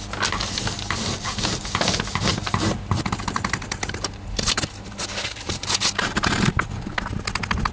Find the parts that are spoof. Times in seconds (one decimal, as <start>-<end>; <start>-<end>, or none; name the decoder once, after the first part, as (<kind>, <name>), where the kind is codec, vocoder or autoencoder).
2.3-6.9 (vocoder, BigVGAN v2)